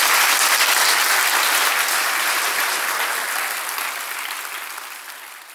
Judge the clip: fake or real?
real